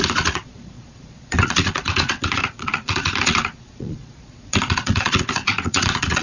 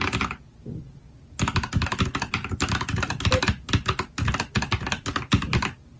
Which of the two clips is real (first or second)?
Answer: second